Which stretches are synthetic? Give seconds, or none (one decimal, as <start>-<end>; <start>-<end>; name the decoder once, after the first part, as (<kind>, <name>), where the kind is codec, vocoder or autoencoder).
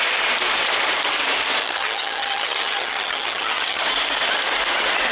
1.6-3.8 (vocoder, HiFi-GAN)